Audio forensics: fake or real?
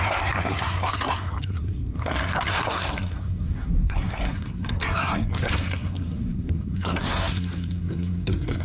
fake